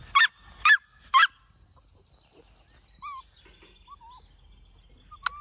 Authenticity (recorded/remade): recorded